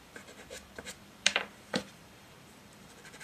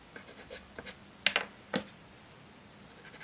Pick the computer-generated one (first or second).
first